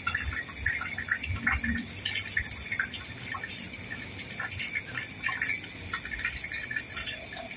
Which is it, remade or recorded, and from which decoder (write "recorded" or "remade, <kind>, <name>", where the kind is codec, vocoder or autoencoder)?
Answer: recorded